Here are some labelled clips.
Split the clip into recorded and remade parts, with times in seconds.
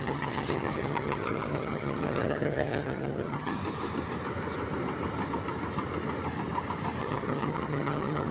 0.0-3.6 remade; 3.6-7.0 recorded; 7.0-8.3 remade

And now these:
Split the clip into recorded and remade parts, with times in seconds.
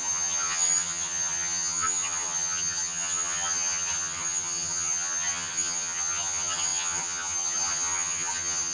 0.0-8.7 remade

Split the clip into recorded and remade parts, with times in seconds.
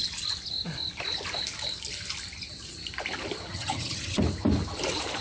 0.0-3.5 recorded; 3.5-4.2 remade; 4.2-5.2 recorded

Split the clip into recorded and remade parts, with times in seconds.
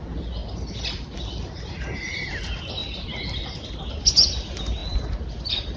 0.0-5.8 recorded